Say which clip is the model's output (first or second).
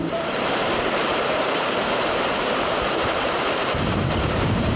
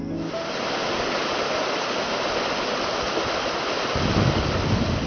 first